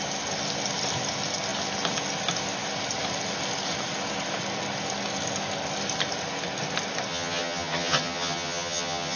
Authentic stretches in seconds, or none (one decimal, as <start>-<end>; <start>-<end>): 0.0-7.1

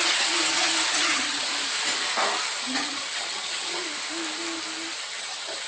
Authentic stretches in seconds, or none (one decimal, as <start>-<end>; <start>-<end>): 1.5-2.6; 3.8-5.0

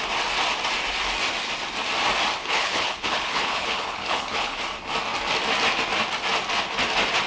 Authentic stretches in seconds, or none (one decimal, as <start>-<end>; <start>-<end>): 0.0-2.4; 4.6-7.3

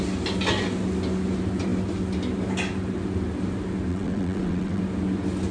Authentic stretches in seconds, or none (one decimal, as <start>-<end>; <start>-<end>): 0.0-3.9; 4.8-5.5

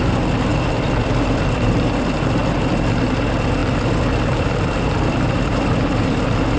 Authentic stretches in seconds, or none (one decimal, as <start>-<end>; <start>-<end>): 0.0-0.5; 1.4-2.4; 3.0-3.6